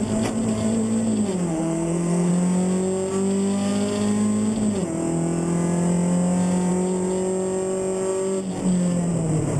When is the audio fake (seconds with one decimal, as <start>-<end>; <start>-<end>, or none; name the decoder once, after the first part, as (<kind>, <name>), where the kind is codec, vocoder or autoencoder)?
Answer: 1.5-2.3 (codec, SNAC)